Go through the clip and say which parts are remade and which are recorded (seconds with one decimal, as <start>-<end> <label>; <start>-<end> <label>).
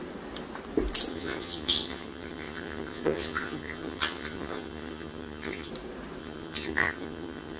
0.0-1.1 recorded; 1.1-5.7 remade; 5.7-6.2 recorded; 6.2-7.6 remade